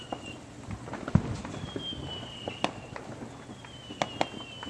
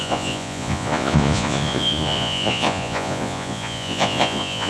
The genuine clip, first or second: first